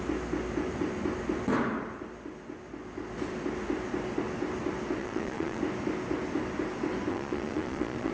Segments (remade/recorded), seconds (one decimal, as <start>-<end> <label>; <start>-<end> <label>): 0.0-5.0 recorded; 5.0-5.6 remade; 5.6-7.1 recorded; 7.1-8.1 remade